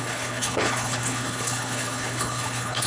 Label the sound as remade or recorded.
remade